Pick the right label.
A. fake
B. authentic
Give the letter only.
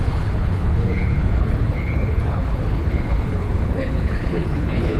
A